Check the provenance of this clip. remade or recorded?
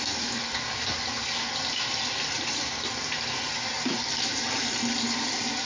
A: recorded